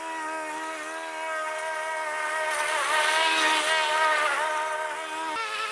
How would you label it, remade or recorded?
recorded